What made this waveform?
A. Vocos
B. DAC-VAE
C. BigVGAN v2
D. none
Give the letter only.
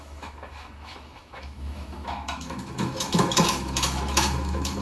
B